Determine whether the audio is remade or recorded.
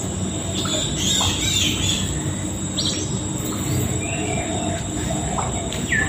recorded